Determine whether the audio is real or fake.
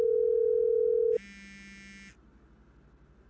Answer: real